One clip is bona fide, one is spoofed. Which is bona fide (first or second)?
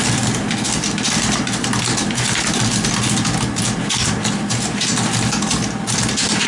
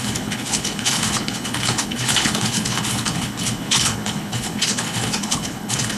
first